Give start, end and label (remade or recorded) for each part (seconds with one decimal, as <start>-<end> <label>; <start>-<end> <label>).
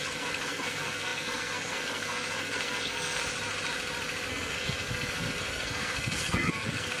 0.0-3.2 remade; 3.2-4.3 recorded; 4.3-7.0 remade